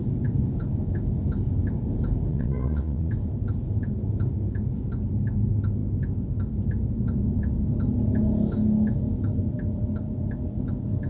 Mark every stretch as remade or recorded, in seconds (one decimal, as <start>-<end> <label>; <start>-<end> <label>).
0.0-2.3 recorded; 2.3-3.1 remade; 3.1-11.1 recorded